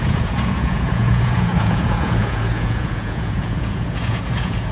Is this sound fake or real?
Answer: fake